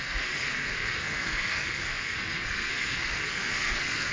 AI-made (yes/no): yes